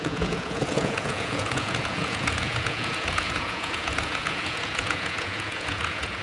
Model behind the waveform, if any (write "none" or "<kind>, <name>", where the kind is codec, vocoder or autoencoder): vocoder, Vocos